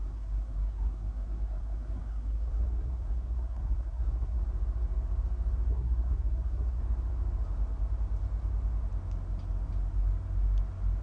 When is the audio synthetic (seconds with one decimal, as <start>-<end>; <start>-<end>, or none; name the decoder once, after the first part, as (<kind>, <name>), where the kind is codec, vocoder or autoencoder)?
0.0-4.4 (codec, SNAC); 5.7-6.8